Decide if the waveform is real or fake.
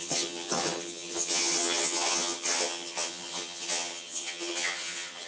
fake